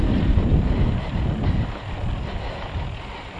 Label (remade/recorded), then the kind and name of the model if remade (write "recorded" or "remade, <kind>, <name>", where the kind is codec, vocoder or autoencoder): recorded